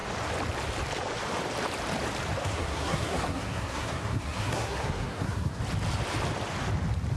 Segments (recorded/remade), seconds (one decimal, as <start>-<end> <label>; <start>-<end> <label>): 0.0-2.4 recorded; 2.4-5.6 remade; 5.6-7.2 recorded